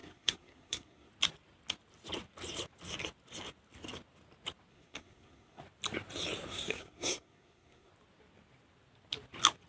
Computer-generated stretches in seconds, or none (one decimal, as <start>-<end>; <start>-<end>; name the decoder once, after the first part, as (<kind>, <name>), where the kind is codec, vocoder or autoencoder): 0.0-1.1 (codec, SNAC); 4.7-5.6; 6.5-7.9